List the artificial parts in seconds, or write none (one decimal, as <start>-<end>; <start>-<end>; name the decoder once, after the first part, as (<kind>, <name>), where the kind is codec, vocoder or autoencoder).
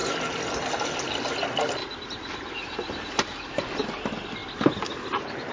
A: none